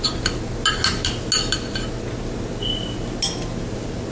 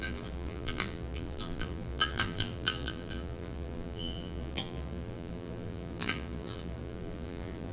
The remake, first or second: second